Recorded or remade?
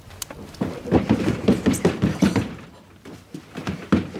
recorded